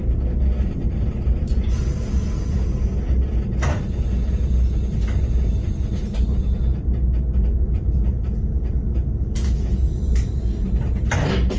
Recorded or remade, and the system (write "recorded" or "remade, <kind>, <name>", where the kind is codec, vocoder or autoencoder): recorded